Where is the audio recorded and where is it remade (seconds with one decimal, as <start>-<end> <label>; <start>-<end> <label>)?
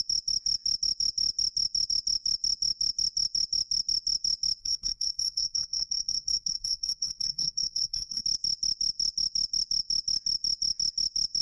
0.0-4.6 recorded; 4.6-8.2 remade; 8.2-11.4 recorded